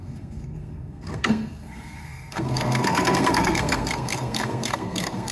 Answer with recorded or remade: remade